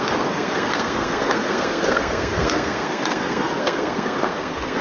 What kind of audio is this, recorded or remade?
remade